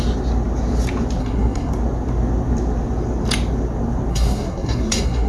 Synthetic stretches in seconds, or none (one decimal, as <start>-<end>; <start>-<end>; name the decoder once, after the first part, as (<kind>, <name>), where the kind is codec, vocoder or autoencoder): 1.2-1.7 (codec, SNAC); 4.1-5.3